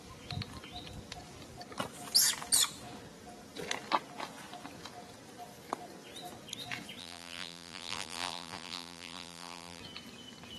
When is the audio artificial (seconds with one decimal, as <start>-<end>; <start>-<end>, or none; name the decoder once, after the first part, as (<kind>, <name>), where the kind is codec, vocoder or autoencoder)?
7.0-9.8 (vocoder, BigVGAN v2)